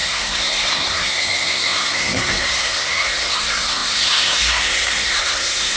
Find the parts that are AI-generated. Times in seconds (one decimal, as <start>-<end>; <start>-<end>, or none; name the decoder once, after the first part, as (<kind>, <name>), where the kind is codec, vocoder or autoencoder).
0.0-5.8 (codec, SNAC)